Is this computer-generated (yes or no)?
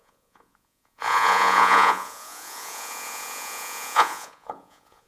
yes